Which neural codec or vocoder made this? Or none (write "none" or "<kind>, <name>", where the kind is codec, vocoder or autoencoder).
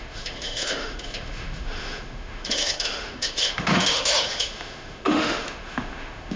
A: autoencoder, DAC-VAE